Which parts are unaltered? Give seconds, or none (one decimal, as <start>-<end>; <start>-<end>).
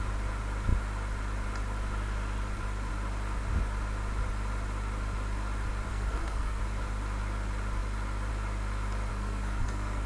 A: 0.0-5.9; 6.6-9.1